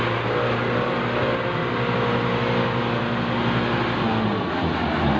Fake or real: real